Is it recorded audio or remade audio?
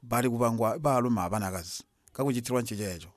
recorded